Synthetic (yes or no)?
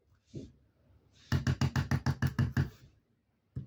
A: no